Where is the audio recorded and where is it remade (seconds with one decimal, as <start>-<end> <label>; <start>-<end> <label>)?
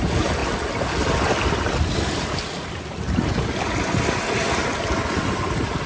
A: 0.0-5.9 recorded